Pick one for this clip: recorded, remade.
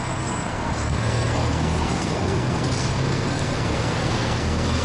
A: remade